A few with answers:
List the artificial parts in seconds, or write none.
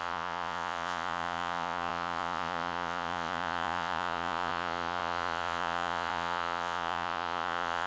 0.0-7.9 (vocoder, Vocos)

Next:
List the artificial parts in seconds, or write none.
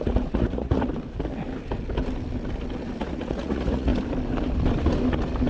0.0-0.9 (vocoder, Vocos); 3.0-3.9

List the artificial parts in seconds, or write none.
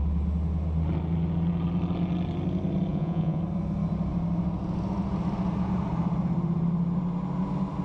2.9-3.4 (vocoder, Vocos)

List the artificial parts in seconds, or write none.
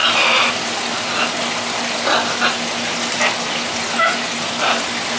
none